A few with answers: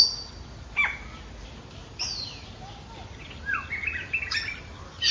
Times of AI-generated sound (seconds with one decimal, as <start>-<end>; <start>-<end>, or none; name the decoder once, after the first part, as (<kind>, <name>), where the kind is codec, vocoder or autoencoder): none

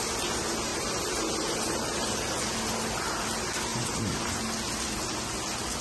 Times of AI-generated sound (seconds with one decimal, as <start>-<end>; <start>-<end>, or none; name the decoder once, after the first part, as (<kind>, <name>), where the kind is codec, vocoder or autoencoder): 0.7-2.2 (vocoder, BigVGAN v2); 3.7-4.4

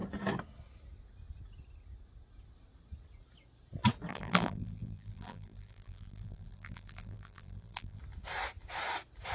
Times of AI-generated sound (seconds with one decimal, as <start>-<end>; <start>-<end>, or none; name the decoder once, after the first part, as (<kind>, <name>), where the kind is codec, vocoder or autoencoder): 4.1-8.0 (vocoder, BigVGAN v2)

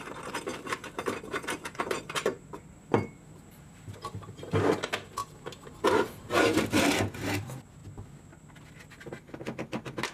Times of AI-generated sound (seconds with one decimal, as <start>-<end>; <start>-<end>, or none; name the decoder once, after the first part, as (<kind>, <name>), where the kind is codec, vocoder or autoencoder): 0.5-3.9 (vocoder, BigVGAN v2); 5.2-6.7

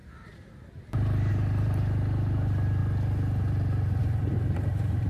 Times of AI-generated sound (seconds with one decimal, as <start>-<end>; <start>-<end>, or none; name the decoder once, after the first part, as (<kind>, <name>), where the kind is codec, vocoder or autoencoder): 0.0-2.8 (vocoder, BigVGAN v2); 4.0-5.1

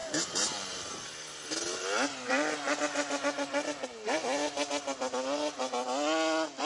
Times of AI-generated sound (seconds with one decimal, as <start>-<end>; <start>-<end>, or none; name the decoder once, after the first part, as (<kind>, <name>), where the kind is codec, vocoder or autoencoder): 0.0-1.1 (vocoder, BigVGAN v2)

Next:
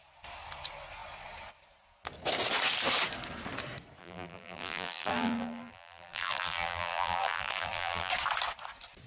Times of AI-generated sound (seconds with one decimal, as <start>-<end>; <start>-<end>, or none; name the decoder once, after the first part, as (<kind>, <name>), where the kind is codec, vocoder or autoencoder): 4.0-8.1 (vocoder, BigVGAN v2)